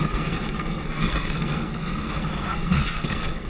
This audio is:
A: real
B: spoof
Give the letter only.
B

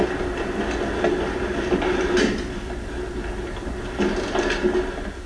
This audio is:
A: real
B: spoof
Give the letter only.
A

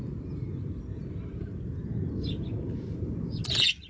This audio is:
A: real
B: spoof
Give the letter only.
A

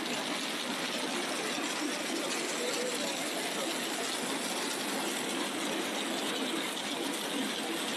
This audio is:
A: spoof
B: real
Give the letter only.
B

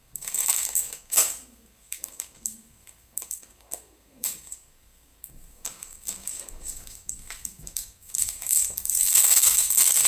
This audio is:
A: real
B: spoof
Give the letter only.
B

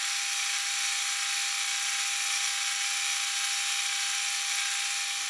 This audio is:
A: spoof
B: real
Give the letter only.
B